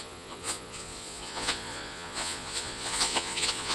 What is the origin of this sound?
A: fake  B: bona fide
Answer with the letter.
A